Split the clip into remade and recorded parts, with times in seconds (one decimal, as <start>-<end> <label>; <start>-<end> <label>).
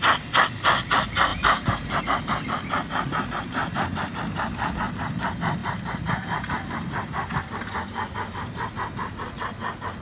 0.0-1.3 recorded; 1.3-2.0 remade; 2.0-3.6 recorded; 3.6-4.1 remade; 4.1-5.6 recorded; 5.6-7.4 remade; 7.4-10.0 recorded